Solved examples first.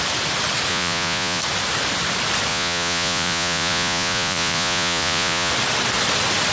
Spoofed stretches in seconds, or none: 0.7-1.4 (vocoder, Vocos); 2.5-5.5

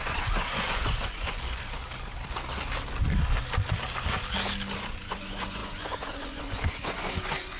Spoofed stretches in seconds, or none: 0.0-1.8 (vocoder, Vocos); 4.8-7.6

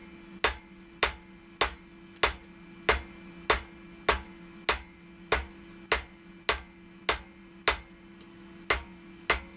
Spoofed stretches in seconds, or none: none

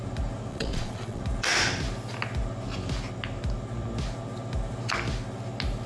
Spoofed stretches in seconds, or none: 0.5-1.2 (vocoder, Vocos)

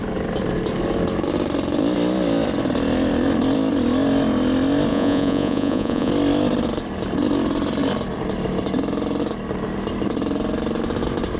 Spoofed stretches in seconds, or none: 4.9-6.1 (vocoder, Vocos)